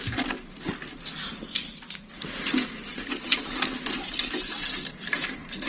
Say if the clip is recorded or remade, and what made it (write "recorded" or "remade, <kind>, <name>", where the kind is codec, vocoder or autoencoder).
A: recorded